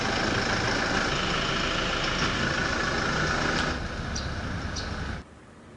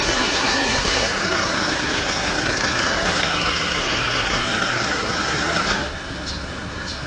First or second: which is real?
first